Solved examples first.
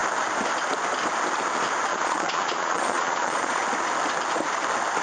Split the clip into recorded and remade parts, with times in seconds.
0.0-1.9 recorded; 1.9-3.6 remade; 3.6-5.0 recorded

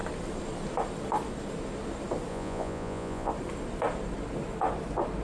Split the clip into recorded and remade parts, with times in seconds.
0.0-2.3 recorded; 2.3-3.3 remade; 3.3-5.2 recorded

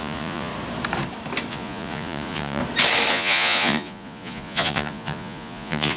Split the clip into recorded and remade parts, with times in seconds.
0.0-0.5 remade; 0.5-1.5 recorded; 1.5-2.6 remade; 2.6-3.1 recorded; 3.1-6.0 remade

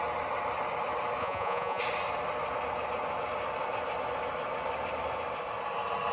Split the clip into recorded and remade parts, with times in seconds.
0.0-1.2 recorded; 1.2-1.8 remade; 1.8-6.1 recorded